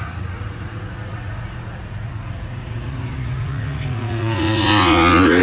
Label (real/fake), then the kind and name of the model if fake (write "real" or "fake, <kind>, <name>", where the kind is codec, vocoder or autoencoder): fake, vocoder, Vocos